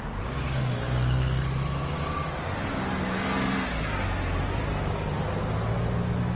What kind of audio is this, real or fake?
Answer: real